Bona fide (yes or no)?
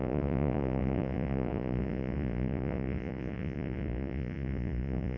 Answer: no